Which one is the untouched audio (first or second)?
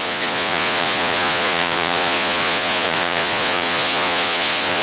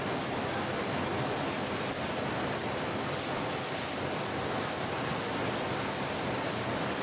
second